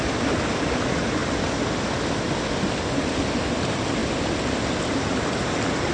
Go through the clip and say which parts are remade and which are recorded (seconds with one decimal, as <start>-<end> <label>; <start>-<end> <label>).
0.0-5.9 recorded